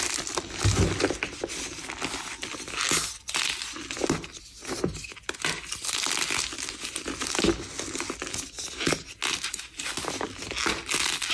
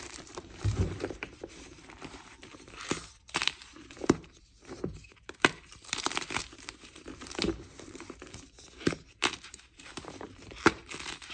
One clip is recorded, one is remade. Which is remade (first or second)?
second